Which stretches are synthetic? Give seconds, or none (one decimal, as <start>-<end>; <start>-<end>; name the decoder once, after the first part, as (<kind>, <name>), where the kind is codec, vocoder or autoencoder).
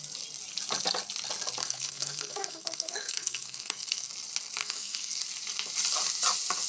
1.6-4.1 (codec, SNAC); 4.6-5.2